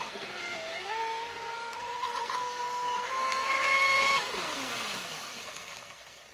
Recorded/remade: remade